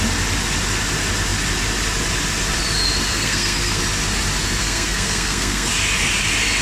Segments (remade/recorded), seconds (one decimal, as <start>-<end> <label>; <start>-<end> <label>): 0.0-3.1 recorded; 3.1-3.8 remade; 3.8-4.6 recorded; 4.6-5.7 remade; 5.7-6.6 recorded